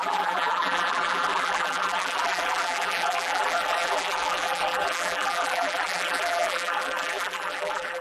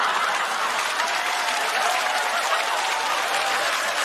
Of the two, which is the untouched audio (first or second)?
second